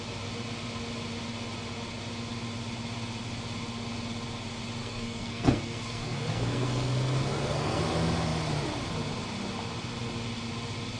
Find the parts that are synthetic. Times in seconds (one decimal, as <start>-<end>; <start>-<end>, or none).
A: 4.8-7.8